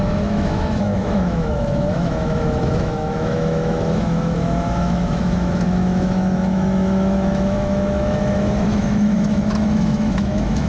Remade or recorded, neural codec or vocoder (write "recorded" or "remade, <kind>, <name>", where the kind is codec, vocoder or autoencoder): remade, autoencoder, DAC-VAE